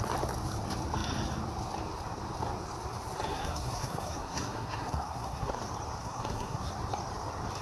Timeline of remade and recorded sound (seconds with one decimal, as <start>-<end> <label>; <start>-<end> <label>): 0.0-3.3 recorded; 3.3-5.6 remade; 5.6-6.0 recorded; 6.0-6.7 remade; 6.7-7.6 recorded